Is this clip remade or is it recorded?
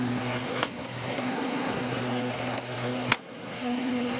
remade